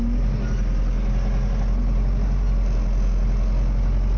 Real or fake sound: real